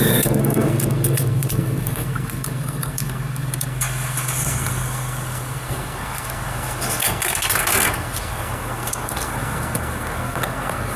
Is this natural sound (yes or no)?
no